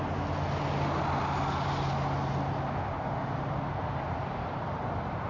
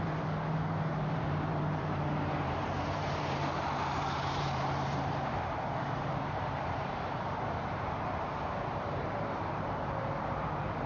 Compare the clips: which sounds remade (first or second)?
second